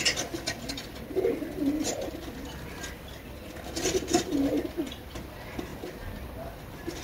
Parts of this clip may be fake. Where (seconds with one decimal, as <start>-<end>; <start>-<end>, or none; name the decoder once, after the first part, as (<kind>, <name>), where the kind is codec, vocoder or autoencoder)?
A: none

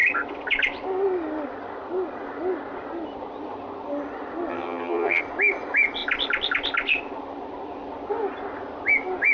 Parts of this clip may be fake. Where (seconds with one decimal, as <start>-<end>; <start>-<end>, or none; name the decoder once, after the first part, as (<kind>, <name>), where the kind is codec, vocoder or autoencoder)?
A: 4.5-5.2 (vocoder, HiFi-GAN)

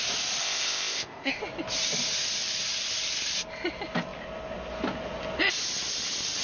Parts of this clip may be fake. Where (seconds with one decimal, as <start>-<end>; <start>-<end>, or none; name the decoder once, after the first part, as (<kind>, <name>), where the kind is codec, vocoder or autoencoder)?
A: 0.4-1.4 (codec, ZipCodec)